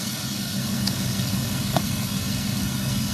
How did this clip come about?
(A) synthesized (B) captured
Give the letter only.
A